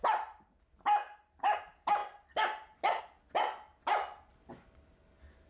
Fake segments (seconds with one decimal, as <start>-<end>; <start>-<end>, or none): 0.0-0.6; 1.0-1.6